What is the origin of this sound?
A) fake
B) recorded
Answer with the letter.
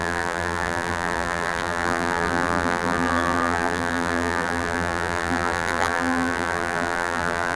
A